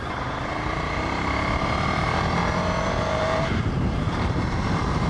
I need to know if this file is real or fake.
fake